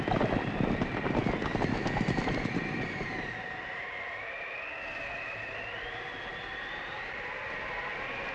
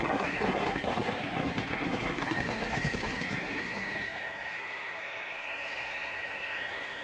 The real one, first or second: first